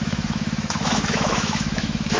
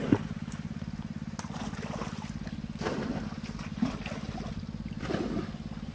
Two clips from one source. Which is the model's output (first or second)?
first